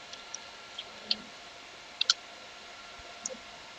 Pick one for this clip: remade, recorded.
recorded